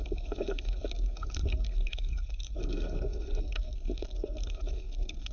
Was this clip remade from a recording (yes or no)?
yes